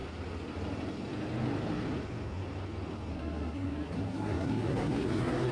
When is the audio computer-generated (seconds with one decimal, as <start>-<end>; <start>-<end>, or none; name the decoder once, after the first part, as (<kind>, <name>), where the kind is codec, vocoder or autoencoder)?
3.1-5.5 (codec, SNAC)